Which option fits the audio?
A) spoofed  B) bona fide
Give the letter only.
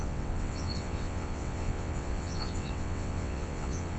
A